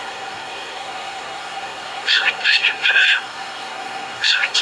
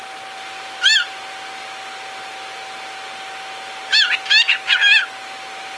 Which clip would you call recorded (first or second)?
second